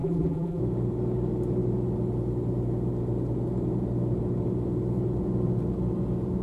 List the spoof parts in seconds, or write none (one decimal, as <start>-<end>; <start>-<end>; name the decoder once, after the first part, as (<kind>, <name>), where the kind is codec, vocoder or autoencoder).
0.0-0.6 (vocoder, BigVGAN v2)